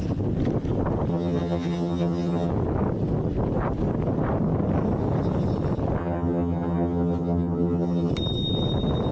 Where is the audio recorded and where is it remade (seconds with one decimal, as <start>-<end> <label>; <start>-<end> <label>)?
0.0-1.1 recorded; 1.1-2.5 remade; 2.5-6.0 recorded; 6.0-8.1 remade; 8.1-9.1 recorded

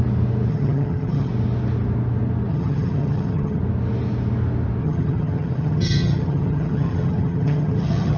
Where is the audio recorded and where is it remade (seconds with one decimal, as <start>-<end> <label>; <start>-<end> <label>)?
0.0-0.5 recorded; 0.5-1.3 remade; 1.3-2.5 recorded; 2.5-3.6 remade; 3.6-4.8 recorded; 4.8-8.2 remade

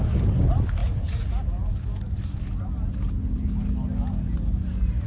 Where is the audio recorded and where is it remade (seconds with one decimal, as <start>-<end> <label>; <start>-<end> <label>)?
0.0-5.1 recorded

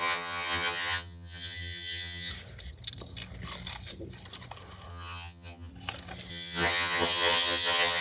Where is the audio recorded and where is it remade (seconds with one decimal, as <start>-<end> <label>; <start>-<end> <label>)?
0.0-2.3 remade; 2.3-4.9 recorded; 4.9-5.7 remade; 5.7-6.3 recorded; 6.3-8.0 remade